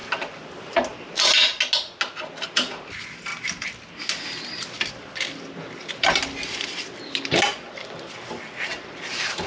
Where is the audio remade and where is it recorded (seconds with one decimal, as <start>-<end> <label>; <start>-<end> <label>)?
0.0-9.5 recorded